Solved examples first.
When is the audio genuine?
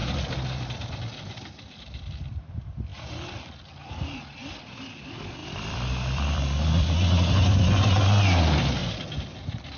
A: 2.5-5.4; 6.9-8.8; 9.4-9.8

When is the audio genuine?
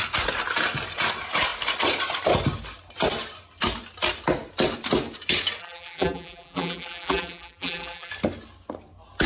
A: 0.0-5.6; 8.1-9.3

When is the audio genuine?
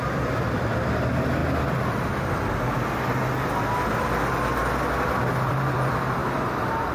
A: 1.4-5.5; 6.2-6.9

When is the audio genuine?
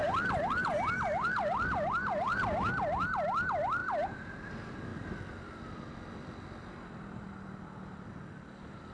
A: 0.0-3.8; 4.5-4.9; 7.3-8.9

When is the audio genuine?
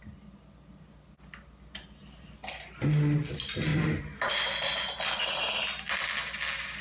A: 0.0-2.0; 2.6-3.7; 4.3-6.8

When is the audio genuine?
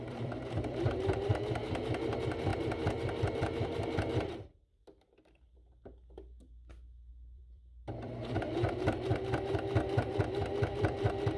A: 1.3-2.0; 2.5-7.1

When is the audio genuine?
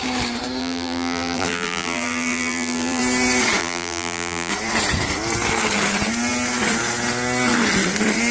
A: 0.0-0.6; 3.0-3.6; 4.5-8.3